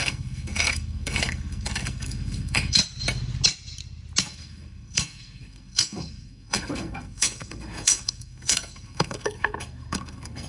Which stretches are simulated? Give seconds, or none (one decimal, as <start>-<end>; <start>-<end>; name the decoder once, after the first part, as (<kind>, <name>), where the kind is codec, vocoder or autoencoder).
0.0-2.8 (codec, SNAC); 4.2-10.5